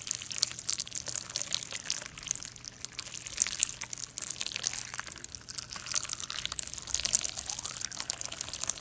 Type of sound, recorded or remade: recorded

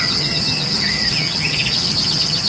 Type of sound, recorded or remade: remade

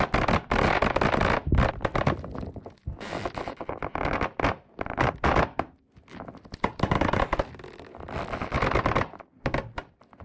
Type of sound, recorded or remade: recorded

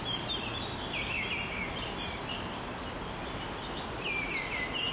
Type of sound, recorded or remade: recorded